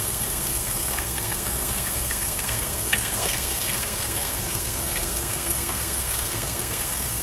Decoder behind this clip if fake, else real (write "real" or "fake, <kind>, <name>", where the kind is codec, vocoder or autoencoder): fake, codec, SNAC